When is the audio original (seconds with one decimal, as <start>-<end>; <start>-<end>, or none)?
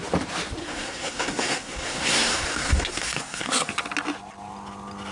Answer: 0.0-0.6; 3.7-5.1